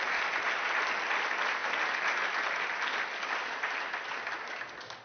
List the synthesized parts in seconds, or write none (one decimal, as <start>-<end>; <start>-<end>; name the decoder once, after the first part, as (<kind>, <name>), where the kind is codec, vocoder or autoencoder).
none